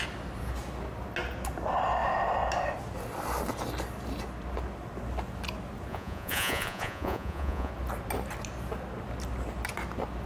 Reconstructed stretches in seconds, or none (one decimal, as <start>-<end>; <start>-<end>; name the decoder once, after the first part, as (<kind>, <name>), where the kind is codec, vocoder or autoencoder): 5.9-7.7 (vocoder, Vocos)